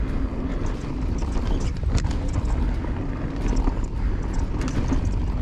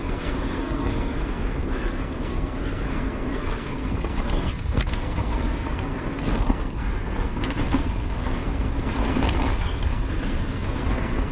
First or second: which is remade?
second